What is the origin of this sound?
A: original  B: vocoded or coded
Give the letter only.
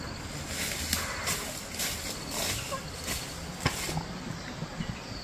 A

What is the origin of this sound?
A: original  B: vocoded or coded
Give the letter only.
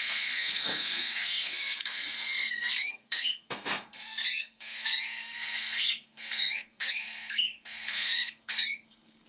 B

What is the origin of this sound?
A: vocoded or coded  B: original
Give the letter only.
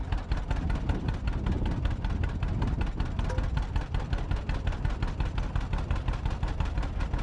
B